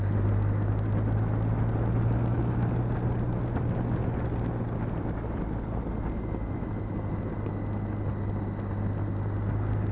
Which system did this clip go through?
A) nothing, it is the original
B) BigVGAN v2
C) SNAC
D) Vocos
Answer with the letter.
A